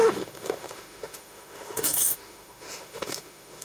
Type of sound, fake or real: fake